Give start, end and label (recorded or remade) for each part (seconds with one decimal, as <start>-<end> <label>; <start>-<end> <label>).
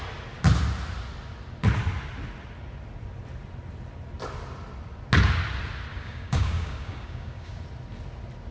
0.0-5.9 recorded; 5.9-7.6 remade; 7.6-8.5 recorded